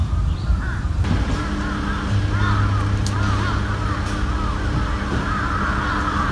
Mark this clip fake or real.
real